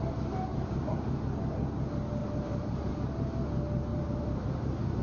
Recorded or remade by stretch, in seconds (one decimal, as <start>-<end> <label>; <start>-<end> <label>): 0.0-0.5 recorded; 0.5-1.2 remade; 1.2-2.2 recorded; 2.2-2.9 remade; 2.9-3.9 recorded; 3.9-5.0 remade